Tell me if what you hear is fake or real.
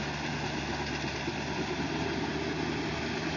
real